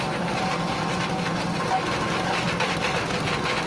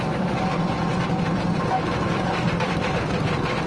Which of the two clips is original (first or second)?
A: first